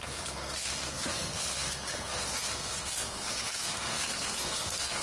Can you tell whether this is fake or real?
fake